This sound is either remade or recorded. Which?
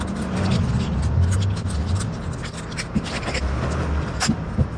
recorded